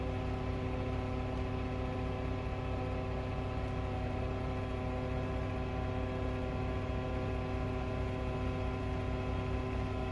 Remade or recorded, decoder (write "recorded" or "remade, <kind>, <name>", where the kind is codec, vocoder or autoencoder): recorded